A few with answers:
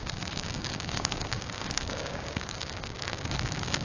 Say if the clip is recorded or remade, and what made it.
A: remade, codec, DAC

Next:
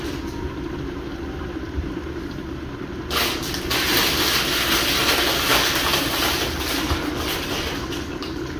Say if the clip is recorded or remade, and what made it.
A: recorded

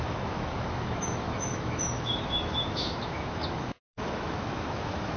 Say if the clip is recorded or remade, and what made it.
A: remade, autoencoder, DAC-VAE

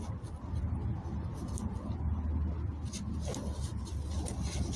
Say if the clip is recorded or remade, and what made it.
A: recorded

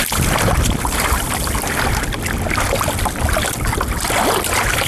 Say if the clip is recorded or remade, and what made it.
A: recorded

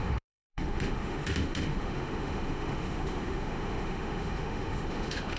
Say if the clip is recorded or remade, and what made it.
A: remade, autoencoder, DAC-VAE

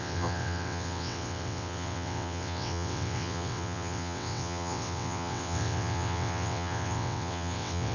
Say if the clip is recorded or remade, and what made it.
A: remade, vocoder, WaveNeXt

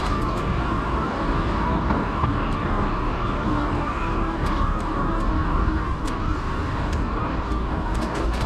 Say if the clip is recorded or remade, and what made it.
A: remade, codec, DAC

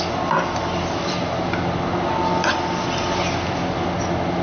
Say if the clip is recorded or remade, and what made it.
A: recorded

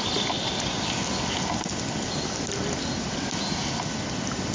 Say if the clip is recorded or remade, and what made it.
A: recorded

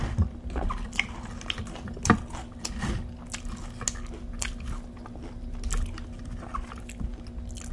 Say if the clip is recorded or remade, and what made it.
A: recorded